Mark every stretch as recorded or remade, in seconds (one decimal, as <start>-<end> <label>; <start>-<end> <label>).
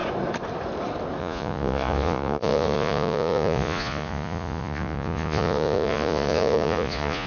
0.0-1.2 recorded; 1.2-7.3 remade